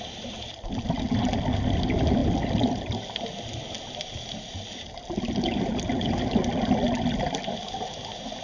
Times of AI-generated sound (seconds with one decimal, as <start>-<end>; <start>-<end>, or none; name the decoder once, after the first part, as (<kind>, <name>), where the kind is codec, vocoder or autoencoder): none